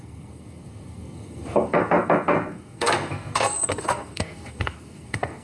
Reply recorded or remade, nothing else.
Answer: remade